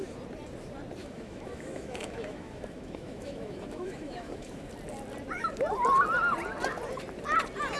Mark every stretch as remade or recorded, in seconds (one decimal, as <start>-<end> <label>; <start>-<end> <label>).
0.0-1.0 recorded; 1.0-4.7 remade; 4.7-7.8 recorded